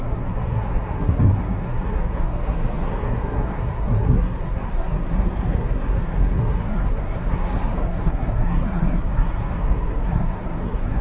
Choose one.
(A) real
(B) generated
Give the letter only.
B